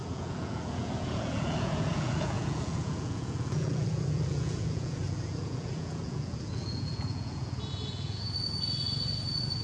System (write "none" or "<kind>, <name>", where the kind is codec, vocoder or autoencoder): vocoder, Vocos